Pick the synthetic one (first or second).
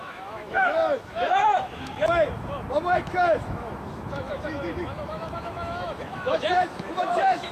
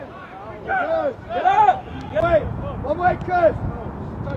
first